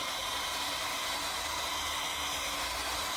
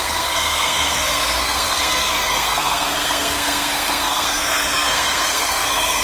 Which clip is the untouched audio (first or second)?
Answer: first